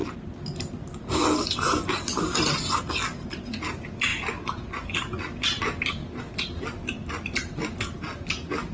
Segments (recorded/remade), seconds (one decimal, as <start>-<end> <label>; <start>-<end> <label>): 0.0-8.7 recorded